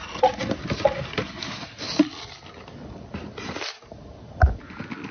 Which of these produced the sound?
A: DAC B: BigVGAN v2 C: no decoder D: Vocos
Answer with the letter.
C